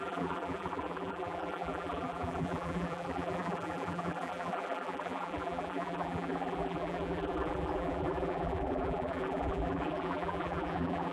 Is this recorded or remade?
remade